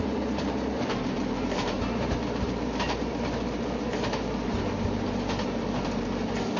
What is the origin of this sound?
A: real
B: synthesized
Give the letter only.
B